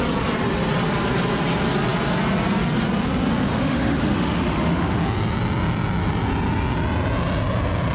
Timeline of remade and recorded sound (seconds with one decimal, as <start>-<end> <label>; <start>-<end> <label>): 0.0-3.5 recorded; 3.5-5.0 remade; 5.0-7.9 recorded